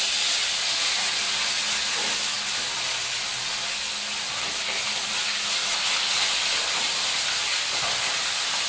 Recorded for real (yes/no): yes